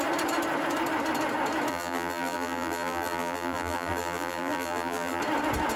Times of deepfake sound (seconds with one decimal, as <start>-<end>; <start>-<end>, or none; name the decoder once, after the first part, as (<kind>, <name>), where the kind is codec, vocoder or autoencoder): 1.7-5.2 (vocoder, BigVGAN v2)